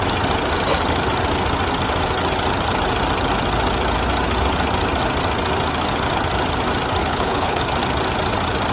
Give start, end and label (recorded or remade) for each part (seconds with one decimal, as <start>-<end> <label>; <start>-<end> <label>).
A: 0.0-7.0 recorded; 7.0-7.6 remade; 7.6-8.7 recorded